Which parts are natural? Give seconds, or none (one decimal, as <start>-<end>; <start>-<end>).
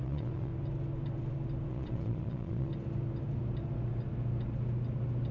0.5-1.7; 2.7-5.3